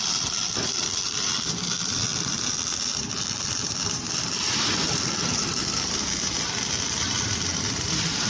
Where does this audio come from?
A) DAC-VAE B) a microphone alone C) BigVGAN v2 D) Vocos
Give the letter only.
C